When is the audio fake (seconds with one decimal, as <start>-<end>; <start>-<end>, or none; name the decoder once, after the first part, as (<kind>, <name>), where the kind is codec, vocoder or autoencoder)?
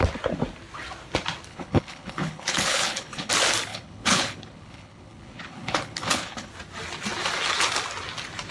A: 1.5-3.3 (codec, HILCodec); 3.7-6.5